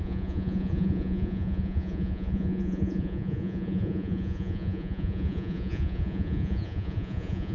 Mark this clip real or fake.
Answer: fake